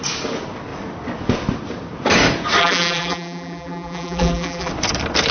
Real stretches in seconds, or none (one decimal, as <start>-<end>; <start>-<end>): 0.0-2.6; 4.7-5.3